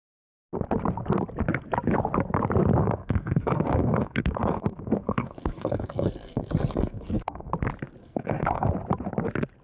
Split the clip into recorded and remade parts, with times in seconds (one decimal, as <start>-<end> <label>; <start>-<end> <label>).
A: 0.0-2.8 recorded; 2.8-7.5 remade; 7.5-8.0 recorded; 8.0-8.7 remade; 8.7-9.6 recorded